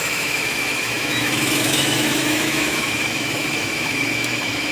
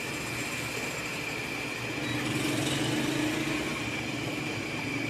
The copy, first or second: first